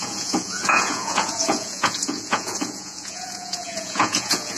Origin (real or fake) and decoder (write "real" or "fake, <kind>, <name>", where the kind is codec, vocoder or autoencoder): fake, vocoder, Vocos